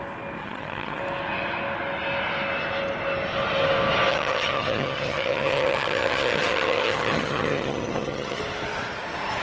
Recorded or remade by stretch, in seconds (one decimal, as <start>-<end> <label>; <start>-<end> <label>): 0.0-0.4 recorded; 0.4-1.0 remade; 1.0-4.1 recorded; 4.1-8.4 remade; 8.4-9.4 recorded